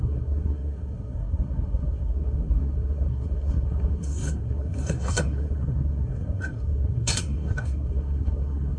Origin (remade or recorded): remade